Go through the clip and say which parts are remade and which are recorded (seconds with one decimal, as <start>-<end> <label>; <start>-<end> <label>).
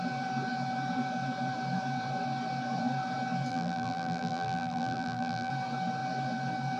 0.0-3.5 recorded; 3.5-5.5 remade; 5.5-6.8 recorded